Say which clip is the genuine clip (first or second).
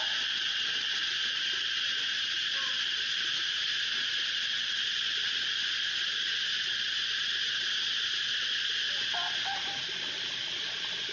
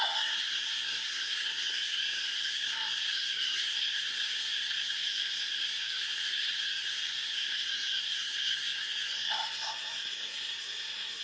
first